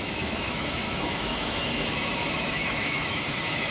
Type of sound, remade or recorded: remade